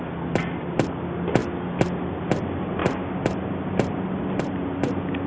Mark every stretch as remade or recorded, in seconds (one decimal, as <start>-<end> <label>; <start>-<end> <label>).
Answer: 0.0-5.3 recorded